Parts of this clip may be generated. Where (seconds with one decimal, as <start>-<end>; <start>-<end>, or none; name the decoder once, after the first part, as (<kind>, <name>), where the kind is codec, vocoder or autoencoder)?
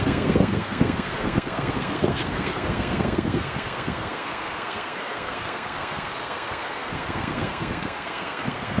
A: 0.0-8.8 (codec, SNAC)